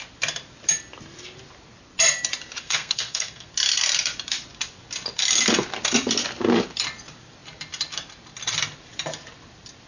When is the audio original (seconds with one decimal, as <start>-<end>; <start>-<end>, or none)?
0.0-2.6; 3.5-9.9